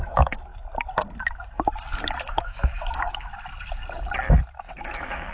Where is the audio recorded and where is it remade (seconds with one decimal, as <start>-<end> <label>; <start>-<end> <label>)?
0.0-0.5 remade; 0.5-2.3 recorded; 2.3-3.3 remade; 3.3-4.5 recorded; 4.5-5.3 remade